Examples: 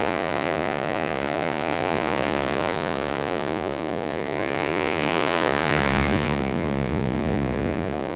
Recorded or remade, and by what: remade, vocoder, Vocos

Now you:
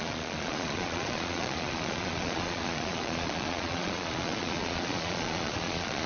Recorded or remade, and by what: remade, vocoder, Vocos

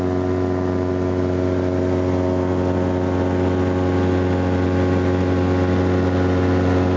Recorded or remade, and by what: recorded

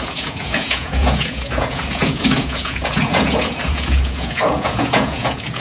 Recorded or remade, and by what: remade, vocoder, Vocos